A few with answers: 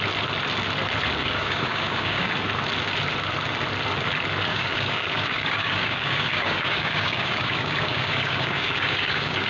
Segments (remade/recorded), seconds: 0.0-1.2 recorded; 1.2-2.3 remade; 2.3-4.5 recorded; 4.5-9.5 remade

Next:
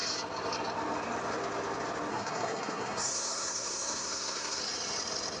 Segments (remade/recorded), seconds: 0.0-2.1 recorded; 2.1-4.6 remade; 4.6-5.4 recorded

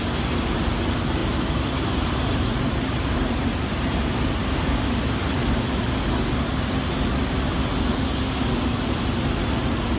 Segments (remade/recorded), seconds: 0.0-10.0 recorded

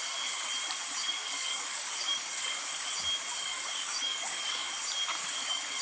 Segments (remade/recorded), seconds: 0.0-1.2 recorded; 1.2-2.9 remade; 2.9-3.4 recorded; 3.4-4.7 remade; 4.7-5.2 recorded; 5.2-5.8 remade

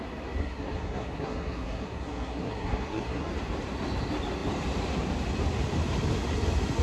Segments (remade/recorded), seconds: 0.0-0.4 recorded; 0.4-3.3 remade; 3.3-6.8 recorded